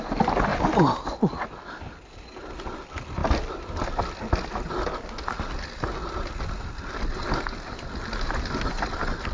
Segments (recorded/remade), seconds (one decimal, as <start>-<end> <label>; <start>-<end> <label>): 0.0-9.3 recorded